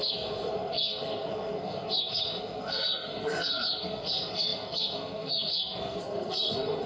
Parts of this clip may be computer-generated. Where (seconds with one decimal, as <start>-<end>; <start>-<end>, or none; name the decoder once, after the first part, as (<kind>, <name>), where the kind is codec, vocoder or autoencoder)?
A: 0.0-6.9 (codec, SNAC)